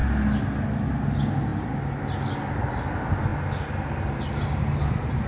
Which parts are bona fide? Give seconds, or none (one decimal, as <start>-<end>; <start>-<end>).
0.0-5.3